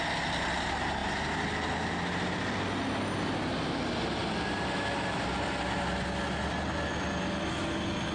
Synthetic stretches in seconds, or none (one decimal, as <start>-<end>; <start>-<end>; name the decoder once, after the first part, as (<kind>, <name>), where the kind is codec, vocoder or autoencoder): none